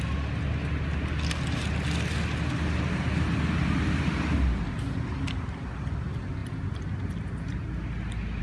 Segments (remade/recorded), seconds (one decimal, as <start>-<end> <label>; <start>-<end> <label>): 0.0-8.4 recorded